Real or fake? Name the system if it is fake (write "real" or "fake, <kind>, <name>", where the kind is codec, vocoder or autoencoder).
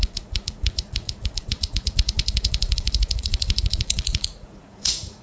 fake, vocoder, Vocos